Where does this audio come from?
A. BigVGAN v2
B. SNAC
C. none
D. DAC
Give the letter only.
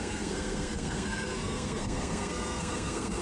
B